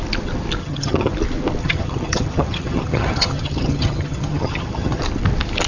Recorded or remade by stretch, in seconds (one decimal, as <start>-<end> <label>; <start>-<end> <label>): 0.0-0.6 recorded; 0.6-1.1 remade; 1.1-1.6 recorded; 1.6-5.0 remade; 5.0-5.7 recorded